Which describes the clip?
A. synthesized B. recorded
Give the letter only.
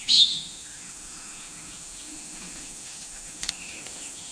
A